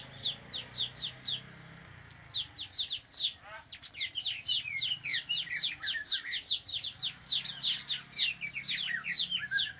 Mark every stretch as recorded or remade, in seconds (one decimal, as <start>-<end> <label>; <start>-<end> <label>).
0.0-9.8 recorded